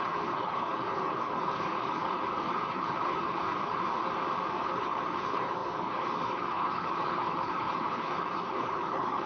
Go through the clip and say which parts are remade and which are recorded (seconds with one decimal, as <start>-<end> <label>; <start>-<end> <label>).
0.0-4.0 remade; 4.0-4.6 recorded; 4.6-9.3 remade